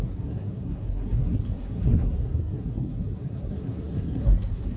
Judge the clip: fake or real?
fake